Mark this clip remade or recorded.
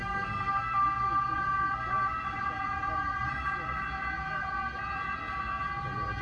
recorded